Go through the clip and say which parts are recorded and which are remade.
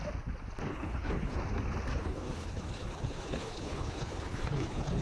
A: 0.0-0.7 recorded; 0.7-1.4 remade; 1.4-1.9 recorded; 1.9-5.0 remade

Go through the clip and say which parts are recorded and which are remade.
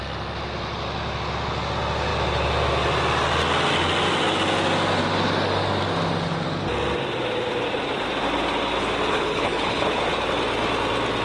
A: 0.0-9.1 recorded; 9.1-10.0 remade; 10.0-11.2 recorded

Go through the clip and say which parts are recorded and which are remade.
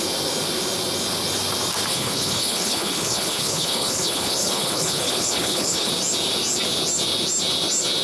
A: 0.0-1.9 recorded; 1.9-5.9 remade; 5.9-8.0 recorded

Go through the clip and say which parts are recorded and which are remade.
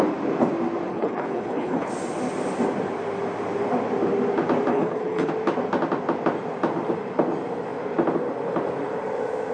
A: 0.0-0.9 recorded; 0.9-1.9 remade; 1.9-4.7 recorded; 4.7-5.3 remade; 5.3-9.5 recorded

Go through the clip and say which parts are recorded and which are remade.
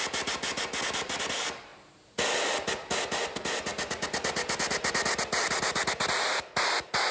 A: 0.0-7.1 recorded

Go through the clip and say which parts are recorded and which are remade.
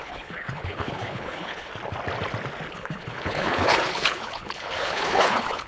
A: 0.0-1.7 remade; 1.7-2.7 recorded; 2.7-5.7 remade